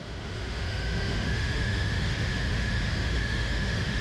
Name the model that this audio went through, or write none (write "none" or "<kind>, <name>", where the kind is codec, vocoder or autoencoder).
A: autoencoder, DAC-VAE